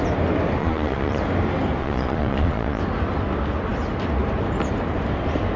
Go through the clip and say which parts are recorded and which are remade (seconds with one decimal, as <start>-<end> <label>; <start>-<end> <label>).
0.0-0.6 recorded; 0.6-1.2 remade; 1.2-1.8 recorded; 1.8-2.8 remade; 2.8-5.6 recorded